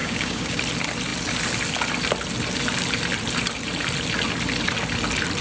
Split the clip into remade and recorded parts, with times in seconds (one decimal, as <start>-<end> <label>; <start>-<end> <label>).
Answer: 0.0-0.6 remade; 0.6-5.4 recorded